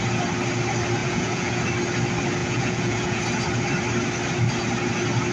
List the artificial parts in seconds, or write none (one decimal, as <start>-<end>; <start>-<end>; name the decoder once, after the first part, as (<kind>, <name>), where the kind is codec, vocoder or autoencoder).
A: 1.0-1.6 (vocoder, Vocos); 2.4-3.2